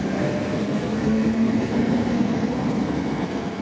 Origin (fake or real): fake